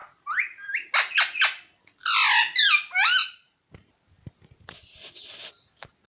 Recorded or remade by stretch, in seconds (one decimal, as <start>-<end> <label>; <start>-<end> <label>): 0.0-0.9 remade; 0.9-3.2 recorded; 3.2-3.9 remade; 3.9-6.1 recorded

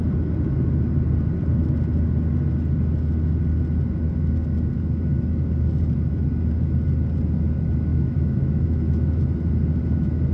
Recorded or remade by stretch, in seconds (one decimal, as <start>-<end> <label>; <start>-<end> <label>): 0.0-7.9 recorded; 7.9-9.2 remade; 9.2-10.3 recorded

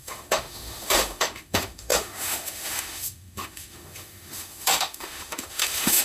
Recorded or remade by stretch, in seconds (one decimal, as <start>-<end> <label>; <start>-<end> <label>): 0.0-6.0 remade

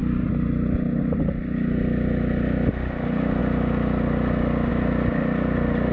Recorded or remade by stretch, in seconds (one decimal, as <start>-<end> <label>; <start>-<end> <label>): 0.0-5.9 recorded